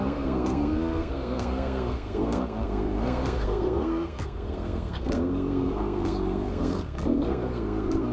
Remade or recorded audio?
remade